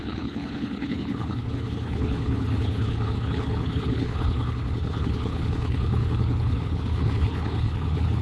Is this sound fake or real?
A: fake